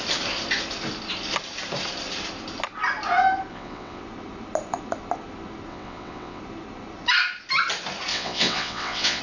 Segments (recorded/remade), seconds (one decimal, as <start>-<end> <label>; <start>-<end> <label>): 0.0-3.5 recorded; 3.5-4.0 remade; 4.0-5.7 recorded; 5.7-6.4 remade; 6.4-8.1 recorded; 8.1-9.2 remade